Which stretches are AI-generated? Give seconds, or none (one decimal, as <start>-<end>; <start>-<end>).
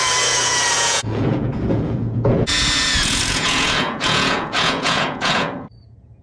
0.0-6.2